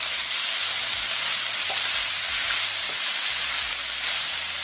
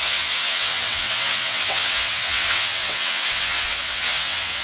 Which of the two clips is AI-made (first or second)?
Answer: second